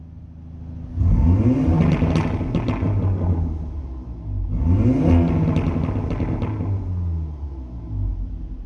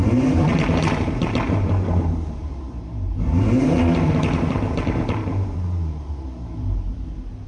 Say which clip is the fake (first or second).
second